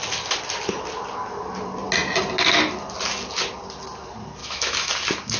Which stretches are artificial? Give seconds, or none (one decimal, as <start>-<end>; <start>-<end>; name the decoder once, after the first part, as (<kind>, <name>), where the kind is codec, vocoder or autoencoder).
4.4-4.9 (autoencoder, DAC-VAE)